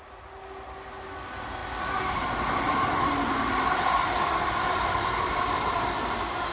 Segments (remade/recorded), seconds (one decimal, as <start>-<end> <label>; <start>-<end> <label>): 0.0-6.5 recorded